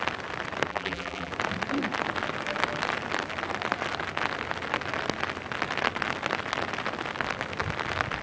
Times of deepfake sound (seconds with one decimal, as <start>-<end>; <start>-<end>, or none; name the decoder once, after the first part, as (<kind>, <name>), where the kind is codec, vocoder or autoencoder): 0.7-1.3 (vocoder, BigVGAN v2)

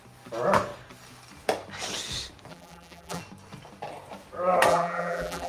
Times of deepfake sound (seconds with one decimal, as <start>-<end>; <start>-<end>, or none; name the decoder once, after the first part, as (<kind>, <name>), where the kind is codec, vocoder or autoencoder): 2.5-3.2 (vocoder, BigVGAN v2); 4.7-5.5